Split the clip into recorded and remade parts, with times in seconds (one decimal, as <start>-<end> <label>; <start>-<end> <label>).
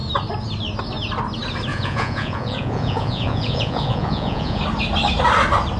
0.0-1.7 recorded; 1.7-4.6 remade; 4.6-5.8 recorded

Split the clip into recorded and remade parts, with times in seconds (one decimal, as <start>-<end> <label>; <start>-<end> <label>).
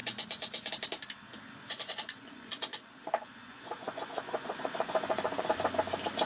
0.0-0.7 remade; 0.7-1.6 recorded; 1.6-5.4 remade; 5.4-6.3 recorded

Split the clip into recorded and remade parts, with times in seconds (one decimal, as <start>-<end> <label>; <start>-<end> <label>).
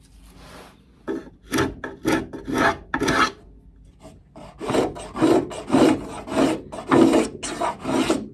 0.0-8.3 recorded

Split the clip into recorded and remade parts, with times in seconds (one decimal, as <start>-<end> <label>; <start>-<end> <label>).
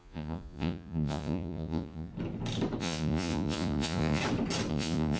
0.0-2.1 remade; 2.1-2.8 recorded; 2.8-4.2 remade; 4.2-4.7 recorded; 4.7-5.2 remade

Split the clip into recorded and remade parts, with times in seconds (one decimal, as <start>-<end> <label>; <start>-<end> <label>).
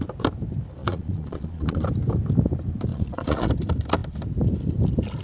0.0-0.8 recorded; 0.8-1.9 remade; 1.9-2.9 recorded; 2.9-3.5 remade; 3.5-5.2 recorded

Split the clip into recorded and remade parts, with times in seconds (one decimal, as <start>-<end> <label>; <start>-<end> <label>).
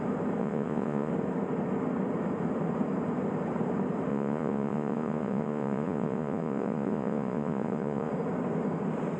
0.0-0.4 recorded; 0.4-1.1 remade; 1.1-4.1 recorded; 4.1-8.1 remade; 8.1-9.2 recorded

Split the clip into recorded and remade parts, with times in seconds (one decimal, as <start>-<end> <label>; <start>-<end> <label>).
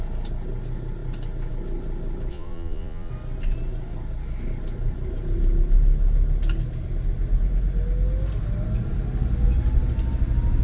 0.0-2.3 recorded; 2.3-3.1 remade; 3.1-10.6 recorded